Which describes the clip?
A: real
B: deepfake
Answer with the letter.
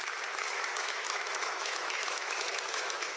B